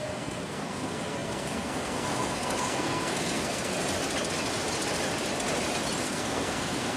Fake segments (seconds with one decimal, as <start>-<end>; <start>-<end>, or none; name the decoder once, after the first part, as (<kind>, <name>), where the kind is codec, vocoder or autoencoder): 0.0-3.7 (codec, SNAC); 6.0-7.0